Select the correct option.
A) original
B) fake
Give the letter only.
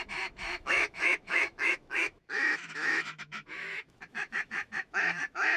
B